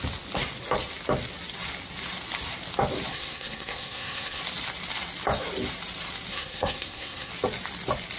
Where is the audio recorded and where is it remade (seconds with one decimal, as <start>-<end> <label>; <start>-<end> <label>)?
0.0-3.1 recorded; 3.1-4.4 remade; 4.4-6.3 recorded; 6.3-7.3 remade; 7.3-8.2 recorded